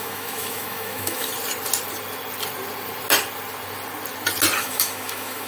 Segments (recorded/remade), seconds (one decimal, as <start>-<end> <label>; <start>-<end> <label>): 0.0-1.3 remade; 1.3-4.6 recorded; 4.6-5.5 remade